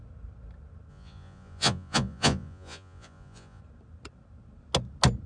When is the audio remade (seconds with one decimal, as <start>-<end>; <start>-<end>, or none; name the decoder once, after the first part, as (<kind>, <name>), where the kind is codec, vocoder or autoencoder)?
0.9-3.6 (vocoder, Vocos)